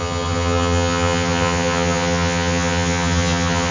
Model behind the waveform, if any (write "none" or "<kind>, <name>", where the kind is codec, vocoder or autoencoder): vocoder, HiFi-GAN